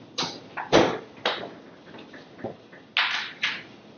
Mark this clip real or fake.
real